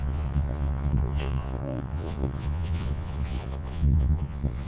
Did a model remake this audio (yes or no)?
yes